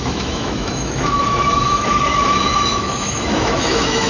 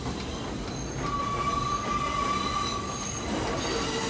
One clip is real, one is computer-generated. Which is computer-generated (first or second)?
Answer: first